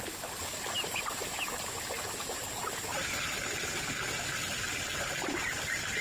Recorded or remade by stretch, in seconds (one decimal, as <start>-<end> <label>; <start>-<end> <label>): 0.0-6.0 recorded